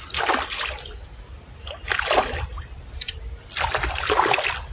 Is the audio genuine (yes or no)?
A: yes